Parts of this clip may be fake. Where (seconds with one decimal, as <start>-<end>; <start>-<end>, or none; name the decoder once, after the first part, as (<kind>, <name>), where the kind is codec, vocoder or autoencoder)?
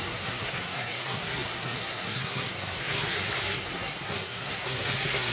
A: 0.0-5.3 (codec, SNAC)